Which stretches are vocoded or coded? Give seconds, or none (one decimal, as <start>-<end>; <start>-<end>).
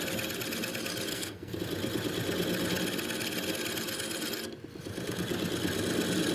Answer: 1.1-1.6